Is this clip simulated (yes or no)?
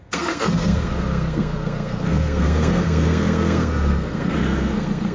yes